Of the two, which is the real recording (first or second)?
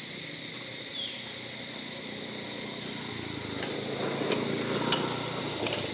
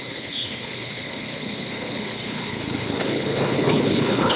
first